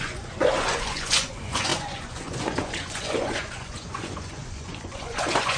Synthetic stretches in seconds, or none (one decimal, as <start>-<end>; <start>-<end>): 0.0-5.6